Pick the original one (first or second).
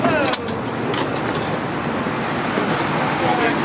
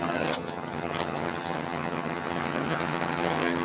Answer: first